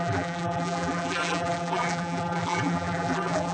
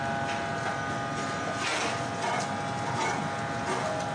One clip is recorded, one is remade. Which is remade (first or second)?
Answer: first